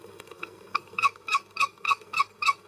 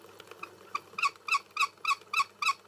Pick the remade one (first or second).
first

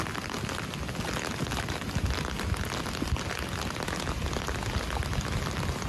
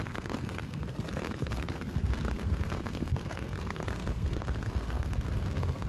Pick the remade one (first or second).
second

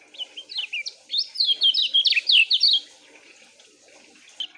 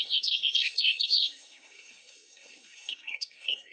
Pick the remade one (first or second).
second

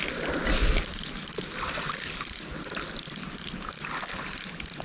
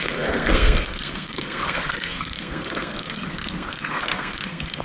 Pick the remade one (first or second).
second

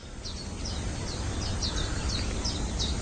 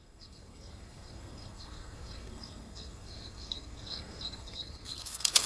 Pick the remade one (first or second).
second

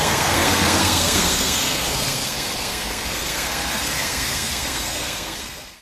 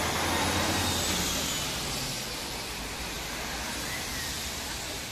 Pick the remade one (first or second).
first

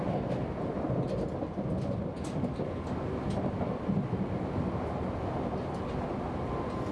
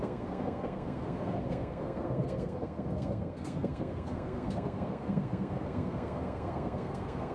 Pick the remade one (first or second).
second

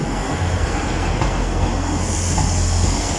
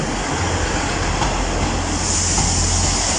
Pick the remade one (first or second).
first